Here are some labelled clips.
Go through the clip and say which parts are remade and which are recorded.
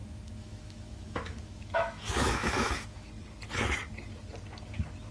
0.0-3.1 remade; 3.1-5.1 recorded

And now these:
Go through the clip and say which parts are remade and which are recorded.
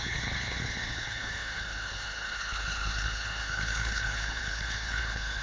0.0-5.4 remade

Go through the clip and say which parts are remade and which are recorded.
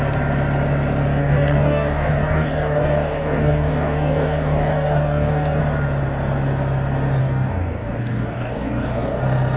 0.0-1.2 recorded; 1.2-5.6 remade; 5.6-7.2 recorded; 7.2-9.2 remade; 9.2-9.6 recorded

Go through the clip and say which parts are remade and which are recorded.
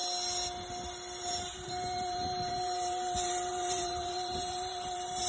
0.0-1.2 recorded; 1.2-5.3 remade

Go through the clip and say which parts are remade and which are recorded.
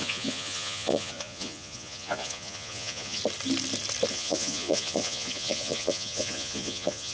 0.0-3.2 remade; 3.2-4.1 recorded; 4.1-7.1 remade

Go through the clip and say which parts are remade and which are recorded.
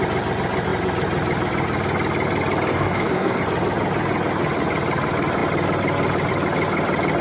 0.0-2.7 recorded; 2.7-3.4 remade; 3.4-7.2 recorded